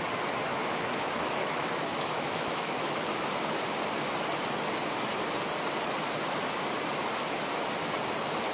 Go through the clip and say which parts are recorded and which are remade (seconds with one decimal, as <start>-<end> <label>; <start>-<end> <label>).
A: 0.0-0.5 recorded; 0.5-3.6 remade; 3.6-8.5 recorded